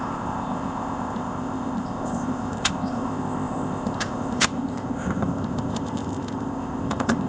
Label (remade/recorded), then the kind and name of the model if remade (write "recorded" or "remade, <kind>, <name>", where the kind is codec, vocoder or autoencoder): remade, codec, ZipCodec